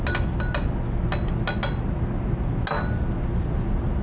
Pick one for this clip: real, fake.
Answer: real